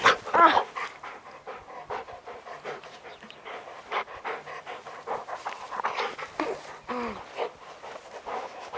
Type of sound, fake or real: real